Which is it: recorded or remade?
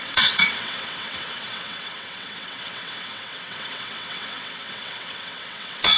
remade